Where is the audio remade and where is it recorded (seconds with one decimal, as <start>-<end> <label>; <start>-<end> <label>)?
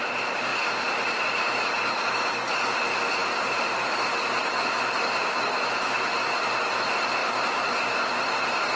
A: 0.0-3.2 recorded; 3.2-4.0 remade; 4.0-8.8 recorded